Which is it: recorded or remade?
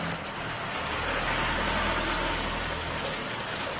recorded